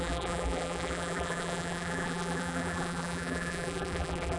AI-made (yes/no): yes